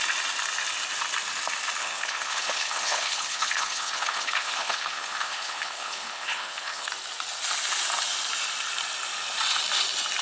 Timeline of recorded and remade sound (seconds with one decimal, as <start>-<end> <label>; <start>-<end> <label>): 0.0-1.8 recorded; 1.8-6.9 remade; 6.9-10.2 recorded